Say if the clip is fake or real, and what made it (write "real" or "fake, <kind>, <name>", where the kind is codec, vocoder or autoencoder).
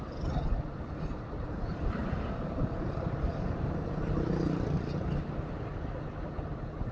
real